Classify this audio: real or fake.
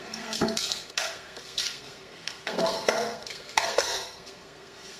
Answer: fake